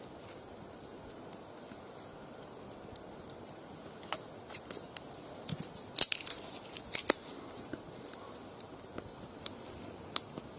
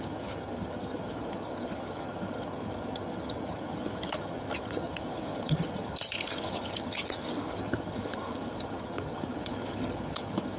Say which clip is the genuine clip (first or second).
first